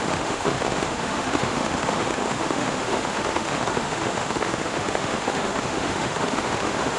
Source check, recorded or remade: remade